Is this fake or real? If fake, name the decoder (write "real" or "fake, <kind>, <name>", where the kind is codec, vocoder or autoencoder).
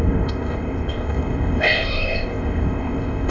fake, codec, ZipCodec